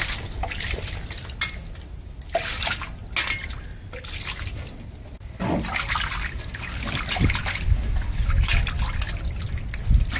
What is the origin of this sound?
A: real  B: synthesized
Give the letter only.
A